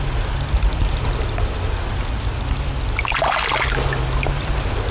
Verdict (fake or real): real